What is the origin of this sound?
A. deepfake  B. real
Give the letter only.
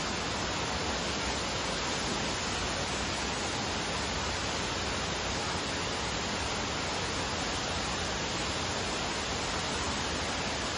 B